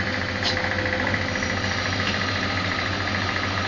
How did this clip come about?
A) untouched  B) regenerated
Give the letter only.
A